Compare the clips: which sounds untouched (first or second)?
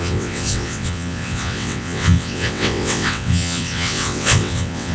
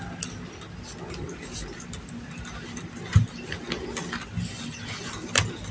second